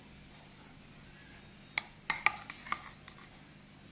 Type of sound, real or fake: real